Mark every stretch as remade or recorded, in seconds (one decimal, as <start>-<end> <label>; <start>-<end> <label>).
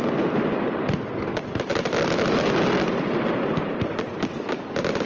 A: 0.0-5.1 recorded